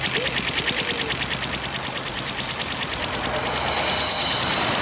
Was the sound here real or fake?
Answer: real